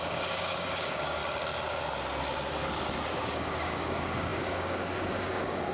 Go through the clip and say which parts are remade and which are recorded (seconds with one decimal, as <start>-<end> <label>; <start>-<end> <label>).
0.0-1.2 remade; 1.2-3.1 recorded; 3.1-5.7 remade